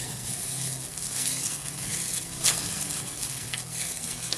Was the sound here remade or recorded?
remade